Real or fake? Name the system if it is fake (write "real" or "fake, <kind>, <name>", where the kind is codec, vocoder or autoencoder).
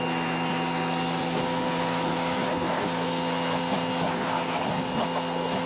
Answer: real